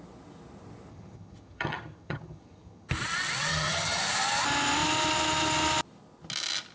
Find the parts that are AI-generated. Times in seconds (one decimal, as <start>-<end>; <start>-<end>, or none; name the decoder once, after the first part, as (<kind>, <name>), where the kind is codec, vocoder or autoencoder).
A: 0.9-2.9 (vocoder, HiFi-GAN); 3.5-4.0